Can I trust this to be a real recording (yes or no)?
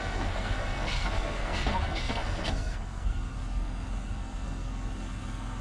no